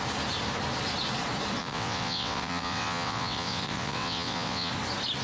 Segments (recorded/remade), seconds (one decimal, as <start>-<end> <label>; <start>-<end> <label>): 0.0-1.6 recorded; 1.6-4.7 remade; 4.7-5.2 recorded